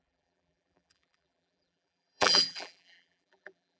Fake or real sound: fake